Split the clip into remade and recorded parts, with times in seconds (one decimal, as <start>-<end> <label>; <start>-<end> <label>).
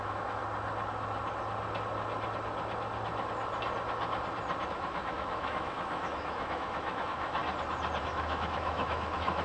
0.0-0.4 remade; 0.4-4.7 recorded; 4.7-7.4 remade; 7.4-8.0 recorded; 8.0-9.4 remade